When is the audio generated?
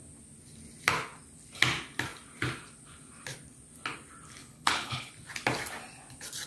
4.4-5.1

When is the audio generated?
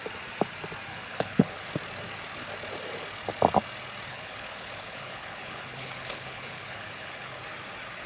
0.9-1.7; 4.1-7.4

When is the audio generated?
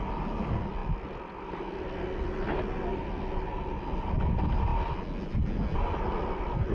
none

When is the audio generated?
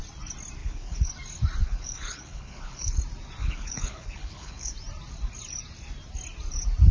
0.6-1.1; 1.6-3.0; 3.4-4.7